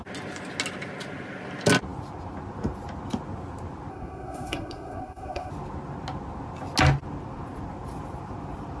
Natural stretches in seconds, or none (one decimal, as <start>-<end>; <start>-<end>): 0.0-3.9; 5.5-8.8

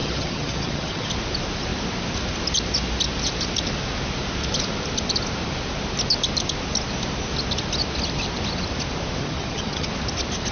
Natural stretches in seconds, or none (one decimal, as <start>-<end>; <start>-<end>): 1.1-9.2; 9.9-10.5

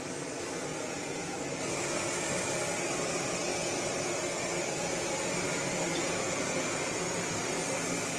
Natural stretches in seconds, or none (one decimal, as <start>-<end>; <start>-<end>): 0.0-0.7; 1.3-3.5; 4.2-5.9; 7.2-8.2

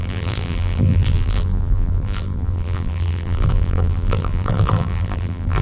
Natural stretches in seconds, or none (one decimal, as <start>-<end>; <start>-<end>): none